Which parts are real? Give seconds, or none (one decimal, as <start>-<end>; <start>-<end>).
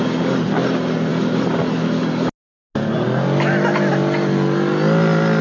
0.0-5.4